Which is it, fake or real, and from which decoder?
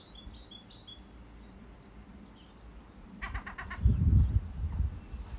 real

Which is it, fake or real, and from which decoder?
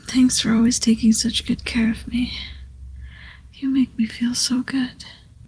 fake, vocoder, BigVGAN v2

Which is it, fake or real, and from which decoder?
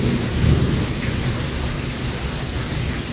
real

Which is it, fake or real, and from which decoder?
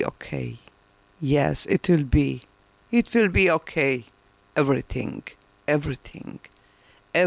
real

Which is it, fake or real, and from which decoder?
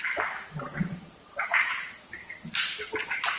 fake, vocoder, BigVGAN v2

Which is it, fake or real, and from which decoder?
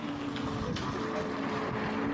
real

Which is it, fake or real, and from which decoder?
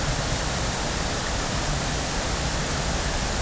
fake, vocoder, BigVGAN v2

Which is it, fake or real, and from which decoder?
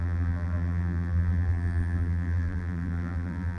fake, vocoder, BigVGAN v2